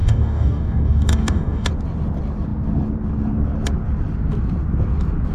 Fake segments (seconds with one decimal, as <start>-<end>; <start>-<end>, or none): 0.0-1.7